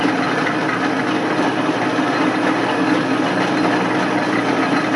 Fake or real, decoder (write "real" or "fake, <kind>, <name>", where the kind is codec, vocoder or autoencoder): real